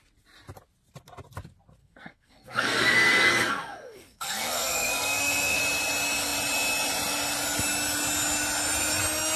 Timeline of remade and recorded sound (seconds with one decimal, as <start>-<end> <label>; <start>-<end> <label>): 0.0-1.8 recorded; 1.8-5.6 remade; 5.6-9.4 recorded